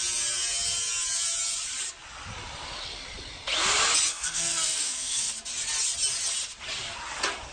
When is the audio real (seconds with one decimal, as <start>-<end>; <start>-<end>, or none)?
0.0-4.1; 5.3-7.5